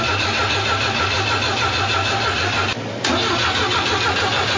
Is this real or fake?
real